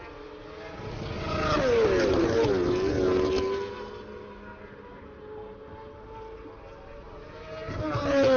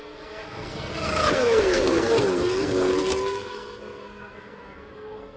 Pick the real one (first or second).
first